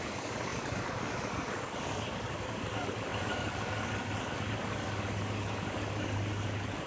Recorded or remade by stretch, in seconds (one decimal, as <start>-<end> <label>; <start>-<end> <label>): 0.0-6.9 remade